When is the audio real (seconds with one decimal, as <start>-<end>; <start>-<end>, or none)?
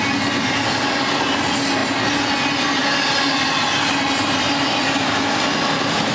0.0-6.1